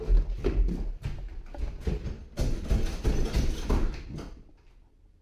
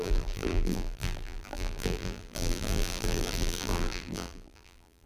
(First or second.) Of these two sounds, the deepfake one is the second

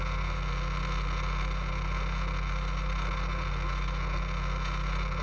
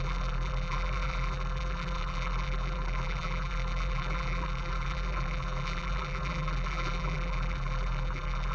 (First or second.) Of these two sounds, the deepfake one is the second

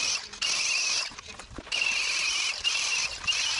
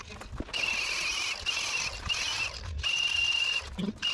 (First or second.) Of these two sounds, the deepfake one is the first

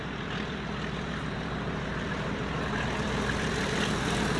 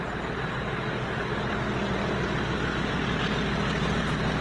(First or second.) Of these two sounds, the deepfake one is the first